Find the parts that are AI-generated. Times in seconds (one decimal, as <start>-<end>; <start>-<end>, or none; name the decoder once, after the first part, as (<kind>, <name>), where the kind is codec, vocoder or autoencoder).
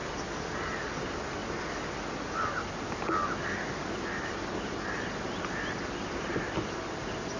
none